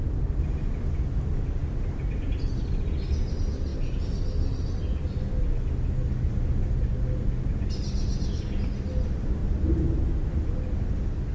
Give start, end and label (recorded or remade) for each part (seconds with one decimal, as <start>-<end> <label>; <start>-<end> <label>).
0.0-11.3 recorded